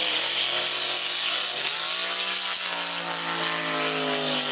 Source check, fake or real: real